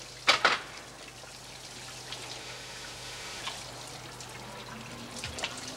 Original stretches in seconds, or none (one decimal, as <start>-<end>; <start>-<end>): 0.0-2.4; 3.4-5.8